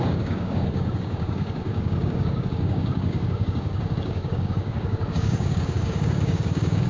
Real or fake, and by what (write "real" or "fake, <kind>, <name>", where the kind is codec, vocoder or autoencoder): fake, codec, DAC